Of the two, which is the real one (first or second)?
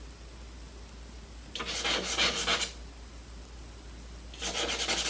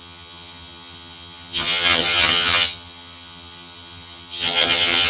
first